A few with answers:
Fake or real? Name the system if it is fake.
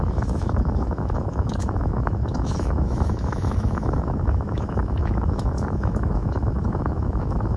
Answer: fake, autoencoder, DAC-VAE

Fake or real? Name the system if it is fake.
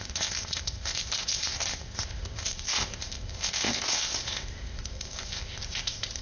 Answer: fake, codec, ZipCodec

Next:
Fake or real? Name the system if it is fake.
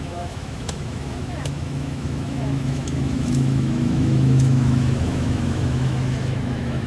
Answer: fake, autoencoder, DAC-VAE